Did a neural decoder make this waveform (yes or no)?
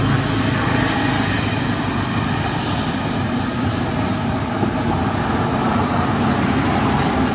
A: no